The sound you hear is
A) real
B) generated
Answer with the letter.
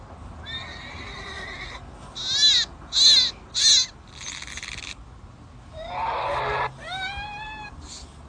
A